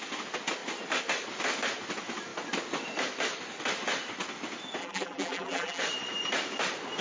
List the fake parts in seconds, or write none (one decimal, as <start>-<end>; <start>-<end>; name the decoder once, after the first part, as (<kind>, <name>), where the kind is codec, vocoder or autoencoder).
4.8-5.8 (vocoder, BigVGAN v2)